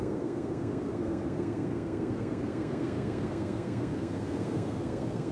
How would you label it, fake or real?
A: fake